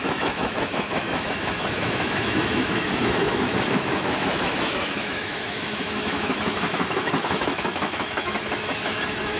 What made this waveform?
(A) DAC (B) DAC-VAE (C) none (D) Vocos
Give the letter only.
B